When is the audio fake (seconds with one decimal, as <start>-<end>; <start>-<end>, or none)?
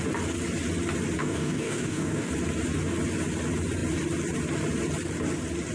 1.2-2.3